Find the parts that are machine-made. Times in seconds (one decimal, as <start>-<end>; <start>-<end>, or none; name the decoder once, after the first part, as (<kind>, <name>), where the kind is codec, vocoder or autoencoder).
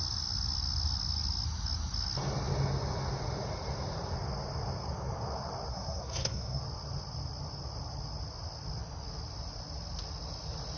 5.7-6.6 (codec, SNAC)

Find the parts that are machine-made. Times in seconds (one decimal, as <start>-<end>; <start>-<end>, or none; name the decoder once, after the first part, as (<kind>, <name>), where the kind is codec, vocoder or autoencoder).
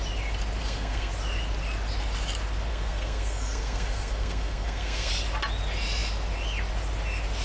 0.6-1.1 (codec, SNAC); 2.7-5.1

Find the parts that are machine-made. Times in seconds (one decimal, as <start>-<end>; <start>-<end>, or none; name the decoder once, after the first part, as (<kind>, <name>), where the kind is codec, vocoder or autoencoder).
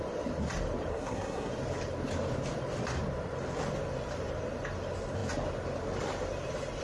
0.9-1.5 (codec, SNAC)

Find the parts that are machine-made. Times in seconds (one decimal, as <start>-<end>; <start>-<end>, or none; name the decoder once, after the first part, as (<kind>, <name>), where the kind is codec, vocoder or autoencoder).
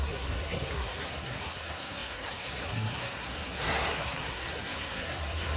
0.0-5.6 (codec, SNAC)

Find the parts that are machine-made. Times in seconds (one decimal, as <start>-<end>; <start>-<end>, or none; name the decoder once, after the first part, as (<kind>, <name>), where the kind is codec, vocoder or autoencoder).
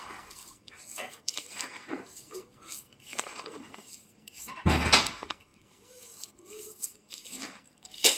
0.0-8.2 (codec, SNAC)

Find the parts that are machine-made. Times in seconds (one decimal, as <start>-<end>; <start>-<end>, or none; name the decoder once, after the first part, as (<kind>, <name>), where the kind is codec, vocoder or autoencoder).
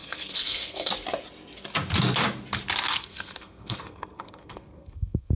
0.0-0.9 (codec, SNAC); 2.9-5.3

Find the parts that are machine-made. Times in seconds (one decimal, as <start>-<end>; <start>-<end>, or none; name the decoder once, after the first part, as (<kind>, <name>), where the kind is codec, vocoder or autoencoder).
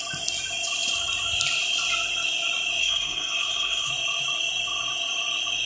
2.8-3.9 (codec, SNAC)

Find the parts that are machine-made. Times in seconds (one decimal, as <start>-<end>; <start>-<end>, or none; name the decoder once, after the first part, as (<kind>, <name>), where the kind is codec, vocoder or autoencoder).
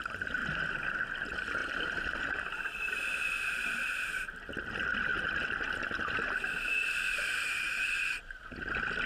none